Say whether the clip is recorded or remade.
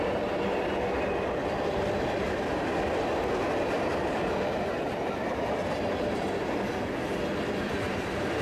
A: recorded